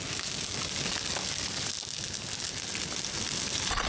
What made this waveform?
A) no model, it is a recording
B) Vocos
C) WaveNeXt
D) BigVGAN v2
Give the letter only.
A